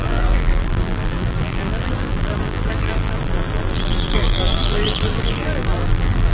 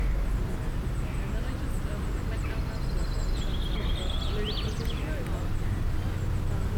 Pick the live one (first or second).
second